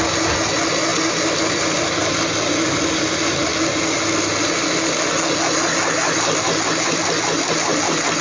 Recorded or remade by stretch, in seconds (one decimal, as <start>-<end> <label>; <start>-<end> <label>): 0.0-0.9 recorded; 0.9-2.1 remade; 2.1-8.2 recorded